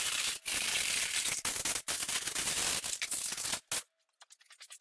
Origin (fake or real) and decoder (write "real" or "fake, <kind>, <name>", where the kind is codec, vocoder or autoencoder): real